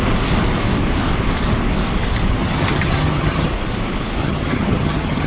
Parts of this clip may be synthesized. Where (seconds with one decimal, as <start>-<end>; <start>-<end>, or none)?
2.4-3.5; 4.2-5.3